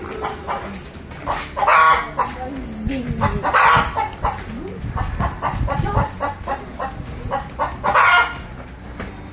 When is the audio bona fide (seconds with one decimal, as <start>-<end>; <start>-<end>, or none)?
0.0-9.3